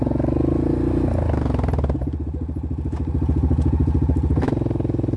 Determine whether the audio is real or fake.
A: real